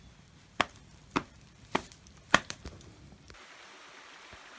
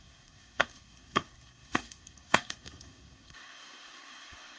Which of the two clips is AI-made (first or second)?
second